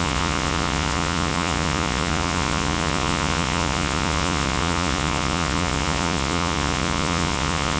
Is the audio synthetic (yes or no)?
yes